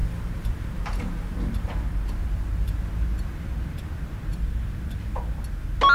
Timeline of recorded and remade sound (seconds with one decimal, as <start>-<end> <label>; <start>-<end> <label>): 0.0-2.8 remade; 2.8-4.3 recorded; 4.3-5.4 remade; 5.4-5.9 recorded

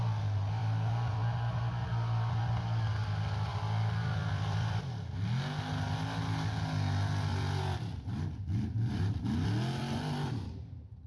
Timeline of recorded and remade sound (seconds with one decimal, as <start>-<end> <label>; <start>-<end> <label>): 0.0-0.6 recorded; 0.6-2.4 remade; 2.4-3.5 recorded; 3.5-4.8 remade; 4.8-7.3 recorded; 7.3-10.6 remade; 10.6-11.1 recorded

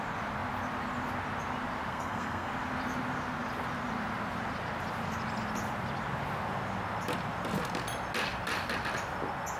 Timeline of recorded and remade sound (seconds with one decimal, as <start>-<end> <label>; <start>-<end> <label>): 0.0-1.9 recorded; 1.9-2.5 remade; 2.5-9.6 recorded

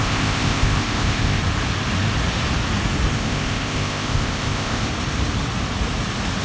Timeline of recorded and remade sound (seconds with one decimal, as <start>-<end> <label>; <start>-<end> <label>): 0.0-1.4 remade; 1.4-3.1 recorded; 3.1-4.9 remade; 4.9-6.4 recorded